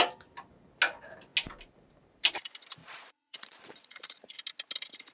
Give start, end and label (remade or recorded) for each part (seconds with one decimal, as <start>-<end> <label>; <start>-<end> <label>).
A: 0.0-2.8 recorded; 2.8-4.3 remade; 4.3-5.1 recorded